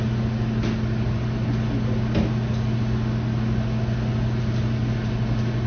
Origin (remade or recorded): recorded